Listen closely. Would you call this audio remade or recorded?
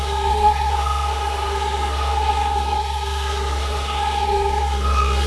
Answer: remade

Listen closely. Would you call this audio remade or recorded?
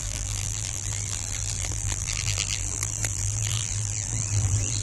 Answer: remade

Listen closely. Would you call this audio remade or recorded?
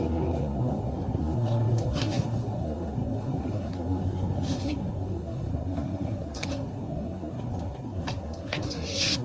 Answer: remade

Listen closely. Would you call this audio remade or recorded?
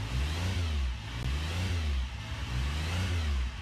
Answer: recorded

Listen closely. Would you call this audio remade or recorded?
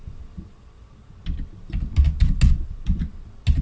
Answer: recorded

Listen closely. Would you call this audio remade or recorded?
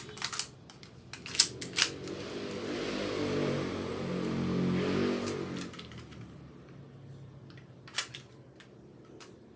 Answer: recorded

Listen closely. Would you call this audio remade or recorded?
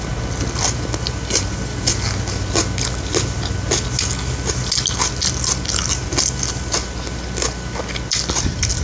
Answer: recorded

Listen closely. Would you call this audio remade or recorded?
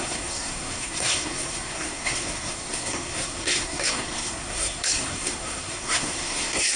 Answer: remade